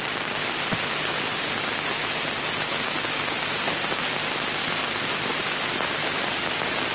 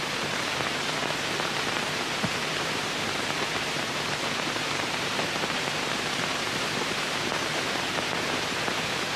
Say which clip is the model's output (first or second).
second